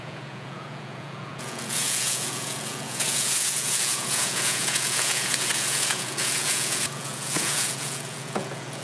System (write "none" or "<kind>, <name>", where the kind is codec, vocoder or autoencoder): vocoder, Vocos